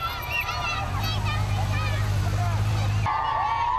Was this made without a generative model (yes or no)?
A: yes